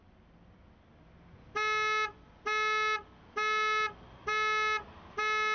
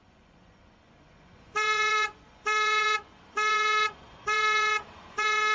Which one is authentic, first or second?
first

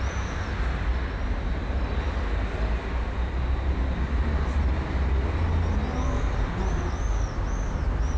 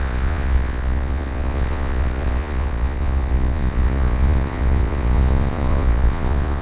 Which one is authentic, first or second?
first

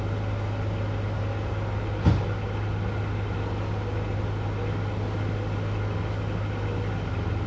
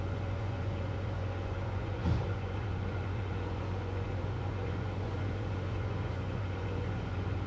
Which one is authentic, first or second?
first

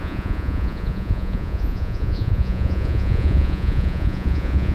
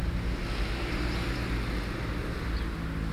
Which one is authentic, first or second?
second